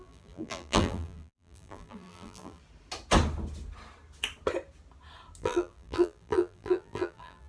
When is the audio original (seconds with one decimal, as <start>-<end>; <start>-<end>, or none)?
2.6-5.4